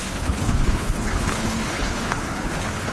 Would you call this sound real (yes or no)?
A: no